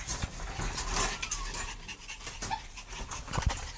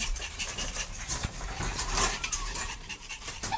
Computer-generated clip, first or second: second